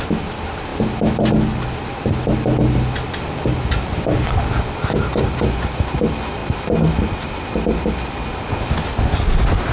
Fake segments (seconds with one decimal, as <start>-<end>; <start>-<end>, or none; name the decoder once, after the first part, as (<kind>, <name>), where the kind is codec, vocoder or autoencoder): none